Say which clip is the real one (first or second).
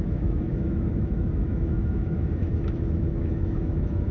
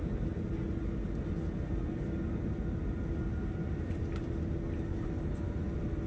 second